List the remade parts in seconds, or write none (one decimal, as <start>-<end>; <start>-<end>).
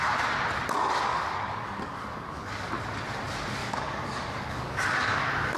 1.1-2.7; 3.6-5.6